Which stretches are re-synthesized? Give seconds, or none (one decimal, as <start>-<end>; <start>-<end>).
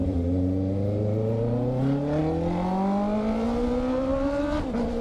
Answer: none